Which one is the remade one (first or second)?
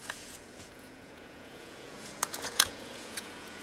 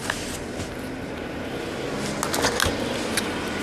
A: first